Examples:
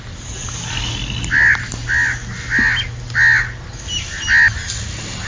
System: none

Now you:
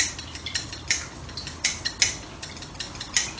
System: none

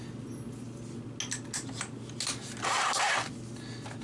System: none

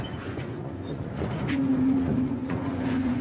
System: vocoder, Vocos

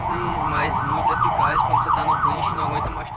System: vocoder, Vocos